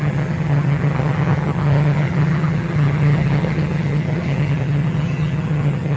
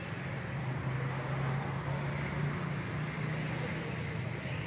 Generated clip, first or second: first